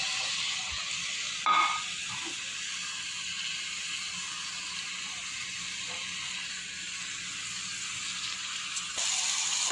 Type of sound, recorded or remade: recorded